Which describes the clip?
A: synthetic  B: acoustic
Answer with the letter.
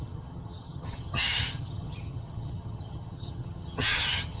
A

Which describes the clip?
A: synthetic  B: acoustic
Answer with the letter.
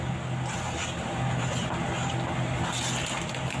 B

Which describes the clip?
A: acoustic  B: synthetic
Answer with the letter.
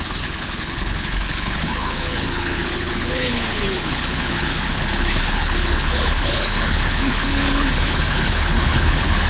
B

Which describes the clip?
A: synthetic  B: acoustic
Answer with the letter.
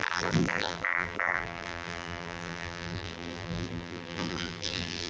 A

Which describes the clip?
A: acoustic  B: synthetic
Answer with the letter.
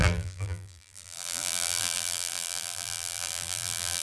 B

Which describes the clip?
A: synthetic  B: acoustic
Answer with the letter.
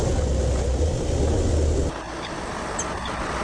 B